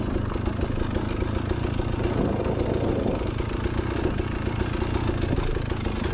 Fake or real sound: real